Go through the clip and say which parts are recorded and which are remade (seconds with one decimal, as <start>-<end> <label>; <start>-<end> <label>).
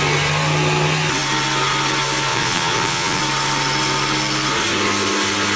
0.0-2.3 recorded; 2.3-3.2 remade; 3.2-5.6 recorded